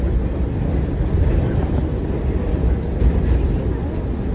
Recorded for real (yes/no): yes